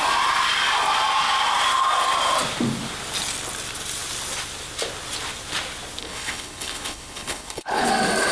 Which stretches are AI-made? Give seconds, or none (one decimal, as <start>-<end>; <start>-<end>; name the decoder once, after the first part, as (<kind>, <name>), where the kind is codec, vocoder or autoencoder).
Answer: 6.0-7.9 (codec, HILCodec)